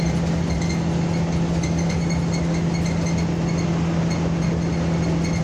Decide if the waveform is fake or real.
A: real